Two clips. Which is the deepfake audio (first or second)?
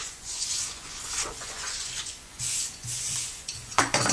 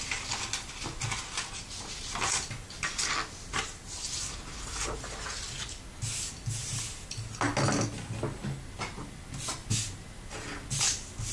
first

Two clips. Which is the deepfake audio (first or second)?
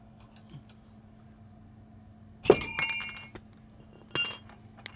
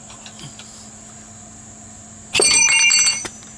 second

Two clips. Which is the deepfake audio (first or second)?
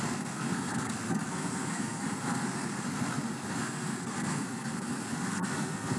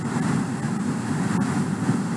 first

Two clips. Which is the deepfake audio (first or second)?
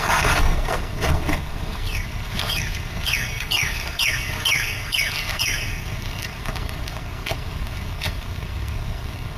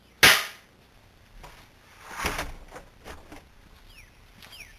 first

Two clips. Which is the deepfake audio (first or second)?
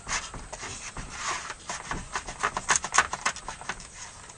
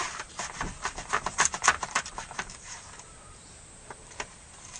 second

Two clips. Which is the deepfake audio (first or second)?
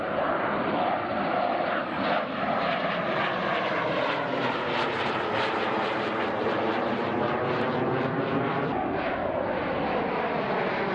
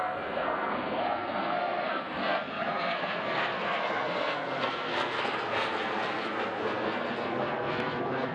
second